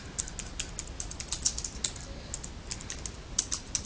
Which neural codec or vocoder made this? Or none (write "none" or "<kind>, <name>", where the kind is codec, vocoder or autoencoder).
none